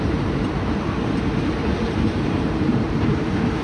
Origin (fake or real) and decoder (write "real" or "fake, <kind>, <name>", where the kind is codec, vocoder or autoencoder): fake, vocoder, BigVGAN v2